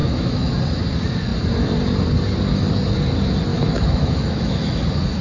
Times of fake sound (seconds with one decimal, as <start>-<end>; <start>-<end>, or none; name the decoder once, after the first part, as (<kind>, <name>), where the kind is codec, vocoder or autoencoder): 0.0-0.5 (autoencoder, DAC-VAE); 3.5-4.8